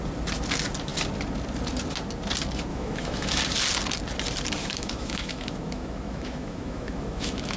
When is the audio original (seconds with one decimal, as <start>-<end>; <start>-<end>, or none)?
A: 0.0-2.7; 3.4-4.6